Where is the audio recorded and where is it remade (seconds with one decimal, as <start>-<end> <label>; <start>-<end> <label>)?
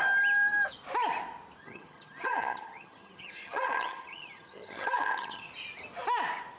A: 0.0-1.6 recorded; 1.6-5.5 remade; 5.5-6.6 recorded